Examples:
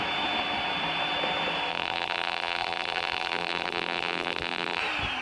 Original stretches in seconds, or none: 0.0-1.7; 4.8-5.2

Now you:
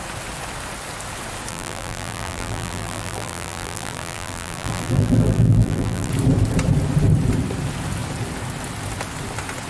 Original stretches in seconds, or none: 0.0-1.5; 6.1-9.7

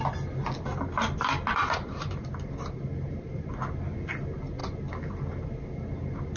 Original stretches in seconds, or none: 0.0-1.6; 3.5-6.4

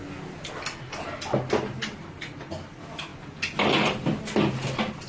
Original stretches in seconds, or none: 0.0-5.1

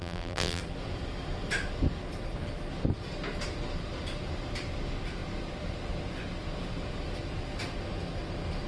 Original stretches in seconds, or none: 0.6-8.7

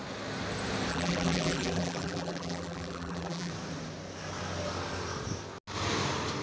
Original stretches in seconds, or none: 0.0-0.9; 3.5-6.4

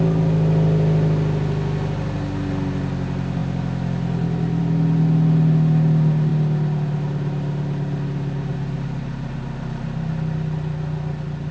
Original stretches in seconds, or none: 0.0-11.5